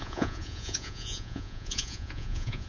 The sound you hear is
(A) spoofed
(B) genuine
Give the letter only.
A